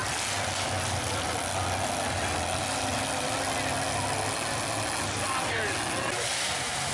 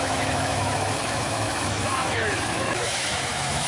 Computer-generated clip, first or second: second